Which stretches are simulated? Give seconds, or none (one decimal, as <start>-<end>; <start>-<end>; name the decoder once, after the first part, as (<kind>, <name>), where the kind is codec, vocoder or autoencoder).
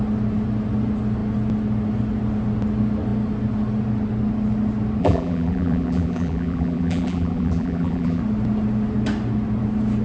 5.0-8.2 (vocoder, BigVGAN v2)